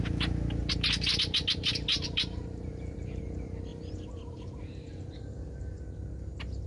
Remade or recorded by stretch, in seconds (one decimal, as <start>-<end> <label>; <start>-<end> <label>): 0.0-1.9 recorded; 1.9-3.2 remade; 3.2-3.7 recorded; 3.7-4.9 remade; 4.9-6.7 recorded